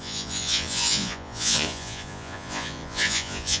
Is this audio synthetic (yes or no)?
yes